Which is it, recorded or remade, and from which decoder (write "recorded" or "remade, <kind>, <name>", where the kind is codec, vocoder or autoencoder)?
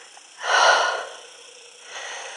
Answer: recorded